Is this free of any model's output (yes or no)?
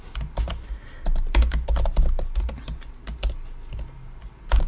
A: yes